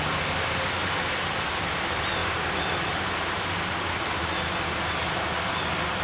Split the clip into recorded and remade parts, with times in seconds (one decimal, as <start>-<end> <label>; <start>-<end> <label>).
0.0-6.0 recorded